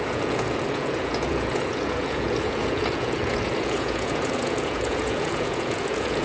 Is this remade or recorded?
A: remade